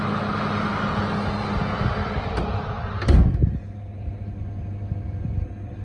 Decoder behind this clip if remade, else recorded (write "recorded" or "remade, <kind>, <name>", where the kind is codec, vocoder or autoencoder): recorded